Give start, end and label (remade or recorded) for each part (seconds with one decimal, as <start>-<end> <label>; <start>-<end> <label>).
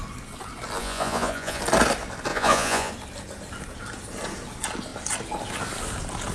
0.0-0.8 recorded; 0.8-1.6 remade; 1.6-2.3 recorded; 2.3-2.9 remade; 2.9-6.3 recorded